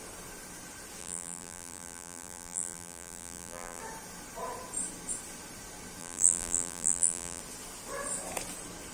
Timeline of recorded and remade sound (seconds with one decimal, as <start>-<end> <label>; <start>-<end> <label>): 0.0-1.0 recorded; 1.0-3.8 remade; 3.8-6.0 recorded; 6.0-7.4 remade; 7.4-8.9 recorded